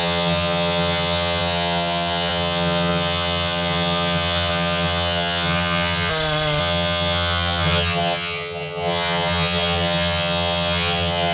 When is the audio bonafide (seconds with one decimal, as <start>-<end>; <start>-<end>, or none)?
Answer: 6.1-6.6